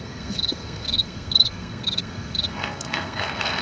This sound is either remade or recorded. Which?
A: remade